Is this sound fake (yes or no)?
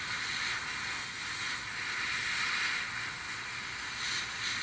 no